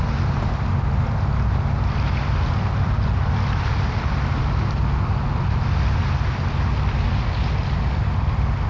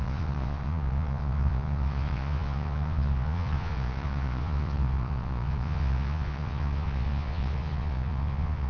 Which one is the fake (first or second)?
second